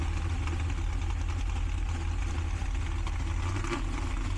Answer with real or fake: real